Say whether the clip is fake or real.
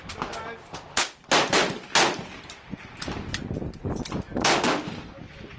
real